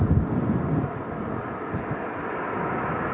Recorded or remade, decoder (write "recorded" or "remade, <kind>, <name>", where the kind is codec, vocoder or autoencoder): recorded